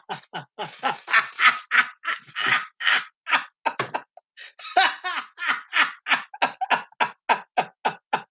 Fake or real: real